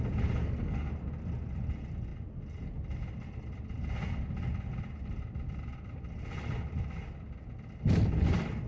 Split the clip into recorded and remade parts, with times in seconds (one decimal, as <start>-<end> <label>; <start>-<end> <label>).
0.0-0.4 recorded; 0.4-0.9 remade; 0.9-8.7 recorded